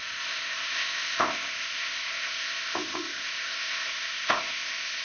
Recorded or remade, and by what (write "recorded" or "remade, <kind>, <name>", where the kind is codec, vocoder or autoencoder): remade, codec, ZipCodec